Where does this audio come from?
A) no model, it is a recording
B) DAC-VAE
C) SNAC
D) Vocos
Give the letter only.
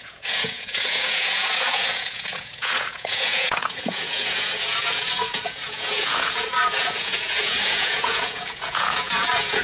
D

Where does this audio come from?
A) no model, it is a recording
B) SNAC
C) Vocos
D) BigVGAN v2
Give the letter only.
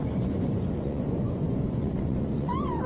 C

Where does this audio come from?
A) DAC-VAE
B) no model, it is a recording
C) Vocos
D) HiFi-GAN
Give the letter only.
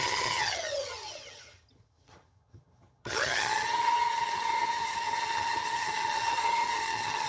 D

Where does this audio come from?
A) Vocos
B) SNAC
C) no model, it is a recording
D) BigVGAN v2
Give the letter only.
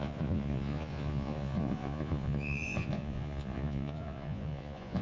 A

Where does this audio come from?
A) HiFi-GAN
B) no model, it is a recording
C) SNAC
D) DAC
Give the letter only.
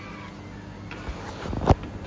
B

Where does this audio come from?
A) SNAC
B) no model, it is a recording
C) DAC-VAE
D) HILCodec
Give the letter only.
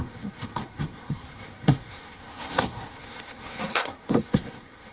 A